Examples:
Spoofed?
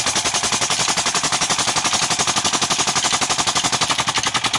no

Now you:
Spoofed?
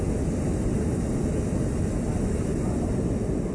no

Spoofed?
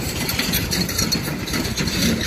yes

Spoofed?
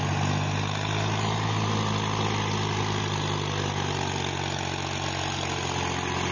no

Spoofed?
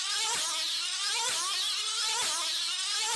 yes